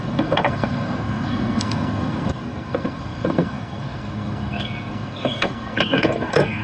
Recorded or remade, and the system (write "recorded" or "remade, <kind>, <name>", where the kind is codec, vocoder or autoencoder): remade, codec, SNAC